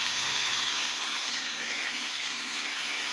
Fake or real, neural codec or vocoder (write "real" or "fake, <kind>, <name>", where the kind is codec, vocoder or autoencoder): fake, codec, SNAC